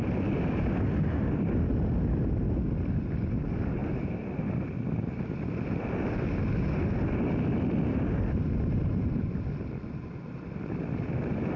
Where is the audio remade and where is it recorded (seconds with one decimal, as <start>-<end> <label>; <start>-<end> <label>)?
0.0-11.6 recorded